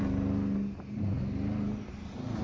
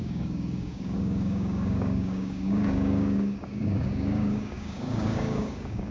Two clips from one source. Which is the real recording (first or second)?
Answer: first